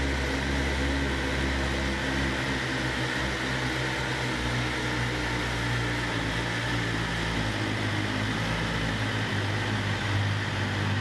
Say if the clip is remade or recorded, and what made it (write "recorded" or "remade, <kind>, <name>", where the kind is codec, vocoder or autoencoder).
recorded